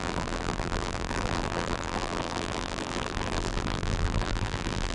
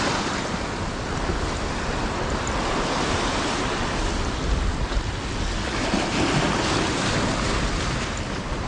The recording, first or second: second